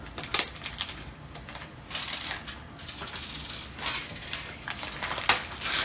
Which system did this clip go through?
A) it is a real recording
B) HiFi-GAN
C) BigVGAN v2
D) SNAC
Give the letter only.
A